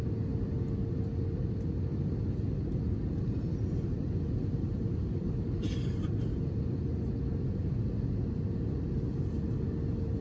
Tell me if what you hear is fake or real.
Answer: real